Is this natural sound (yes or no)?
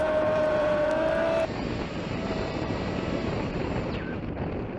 no